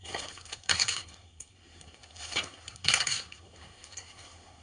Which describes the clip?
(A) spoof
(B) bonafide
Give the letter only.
A